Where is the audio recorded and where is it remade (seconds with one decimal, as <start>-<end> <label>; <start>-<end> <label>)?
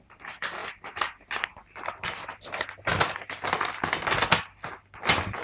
0.0-5.4 recorded